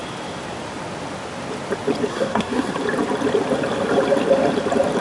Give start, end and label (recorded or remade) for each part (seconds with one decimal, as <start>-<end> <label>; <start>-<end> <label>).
0.0-2.1 recorded; 2.1-2.7 remade; 2.7-5.0 recorded